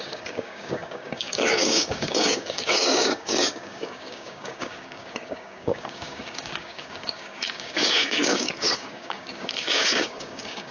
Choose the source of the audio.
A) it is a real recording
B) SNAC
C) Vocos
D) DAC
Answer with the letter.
D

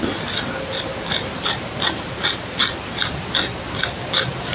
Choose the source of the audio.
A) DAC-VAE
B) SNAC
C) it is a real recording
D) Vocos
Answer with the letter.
C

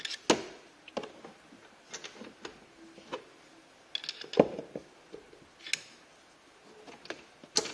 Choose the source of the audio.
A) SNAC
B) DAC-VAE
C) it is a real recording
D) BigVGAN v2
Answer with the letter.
C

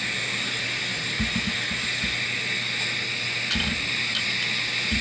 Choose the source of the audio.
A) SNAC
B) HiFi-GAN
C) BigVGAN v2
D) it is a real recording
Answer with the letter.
D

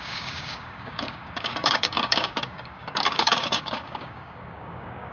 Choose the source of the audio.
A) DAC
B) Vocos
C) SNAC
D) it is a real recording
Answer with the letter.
A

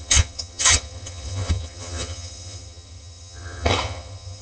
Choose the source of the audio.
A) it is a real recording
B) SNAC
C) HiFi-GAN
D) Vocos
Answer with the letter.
C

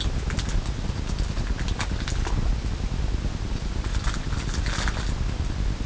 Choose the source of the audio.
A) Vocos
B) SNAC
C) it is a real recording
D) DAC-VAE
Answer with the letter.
C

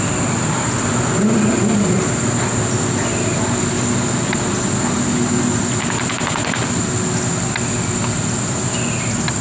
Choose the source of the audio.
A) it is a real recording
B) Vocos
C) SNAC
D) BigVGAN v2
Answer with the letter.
A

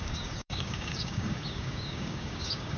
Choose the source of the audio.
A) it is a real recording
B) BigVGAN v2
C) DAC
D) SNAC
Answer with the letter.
C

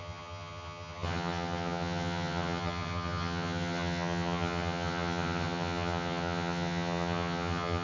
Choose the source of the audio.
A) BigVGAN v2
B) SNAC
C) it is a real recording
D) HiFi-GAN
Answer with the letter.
D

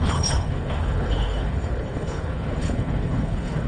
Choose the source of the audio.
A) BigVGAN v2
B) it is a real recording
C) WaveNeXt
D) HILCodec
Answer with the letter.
D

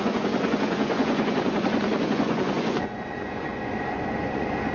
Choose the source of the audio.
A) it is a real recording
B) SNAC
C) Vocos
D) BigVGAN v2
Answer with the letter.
C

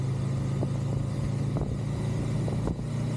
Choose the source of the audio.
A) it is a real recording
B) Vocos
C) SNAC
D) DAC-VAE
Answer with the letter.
A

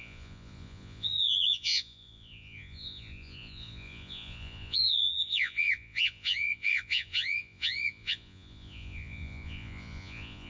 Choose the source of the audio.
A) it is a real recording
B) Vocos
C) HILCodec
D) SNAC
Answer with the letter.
B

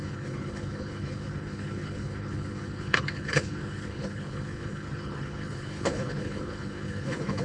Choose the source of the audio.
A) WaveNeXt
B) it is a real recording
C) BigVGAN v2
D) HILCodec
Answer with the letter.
D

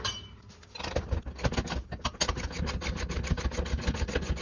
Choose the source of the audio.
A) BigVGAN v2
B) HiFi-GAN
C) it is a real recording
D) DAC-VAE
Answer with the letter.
C